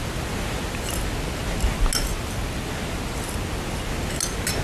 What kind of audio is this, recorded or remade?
recorded